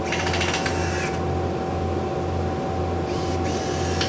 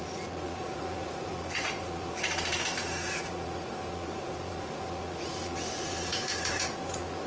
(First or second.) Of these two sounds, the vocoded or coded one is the second